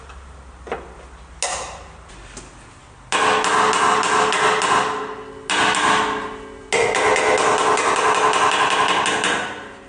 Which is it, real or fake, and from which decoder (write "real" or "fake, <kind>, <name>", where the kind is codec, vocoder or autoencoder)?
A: real